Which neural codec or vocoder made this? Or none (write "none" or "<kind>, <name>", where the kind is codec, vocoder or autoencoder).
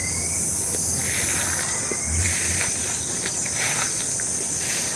none